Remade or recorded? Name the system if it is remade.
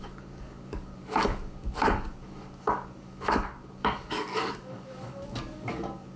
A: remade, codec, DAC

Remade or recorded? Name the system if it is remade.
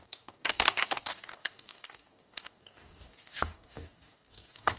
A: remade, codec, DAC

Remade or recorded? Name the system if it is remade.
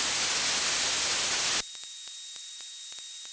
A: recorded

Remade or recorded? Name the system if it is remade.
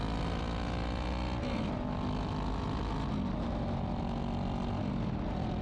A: recorded